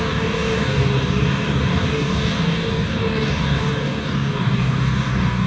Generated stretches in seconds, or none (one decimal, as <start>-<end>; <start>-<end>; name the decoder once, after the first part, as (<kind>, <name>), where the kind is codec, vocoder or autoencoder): 0.0-5.5 (codec, DAC)

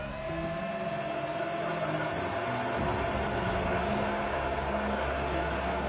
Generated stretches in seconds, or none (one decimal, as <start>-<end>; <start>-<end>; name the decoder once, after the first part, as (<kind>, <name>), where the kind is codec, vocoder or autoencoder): 3.3-5.9 (codec, DAC)